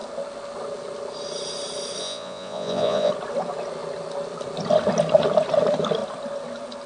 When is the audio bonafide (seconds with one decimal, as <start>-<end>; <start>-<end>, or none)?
0.0-2.0; 3.1-6.9